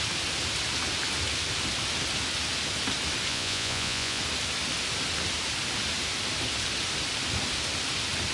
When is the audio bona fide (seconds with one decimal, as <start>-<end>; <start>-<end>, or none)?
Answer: 0.0-3.3; 4.2-8.3

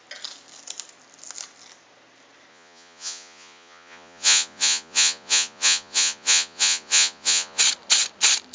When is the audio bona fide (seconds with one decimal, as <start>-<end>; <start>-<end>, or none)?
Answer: 0.0-2.5; 7.6-8.5

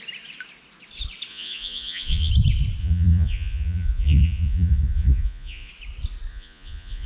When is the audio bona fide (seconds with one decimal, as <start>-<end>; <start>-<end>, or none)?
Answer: 0.0-1.3; 2.3-2.8; 5.7-6.3

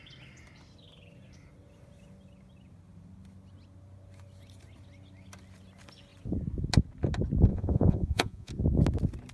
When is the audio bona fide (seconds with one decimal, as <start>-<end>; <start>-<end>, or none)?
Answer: 0.0-7.5; 8.5-9.3

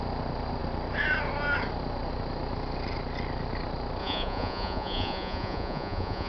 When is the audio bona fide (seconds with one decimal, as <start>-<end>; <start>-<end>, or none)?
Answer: 0.0-4.0

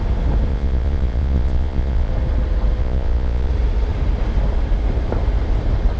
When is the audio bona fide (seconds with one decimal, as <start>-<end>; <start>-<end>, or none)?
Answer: 0.0-0.5; 2.1-2.8; 3.5-6.0